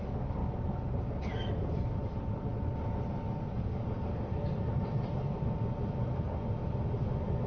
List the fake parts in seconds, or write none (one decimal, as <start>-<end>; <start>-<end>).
none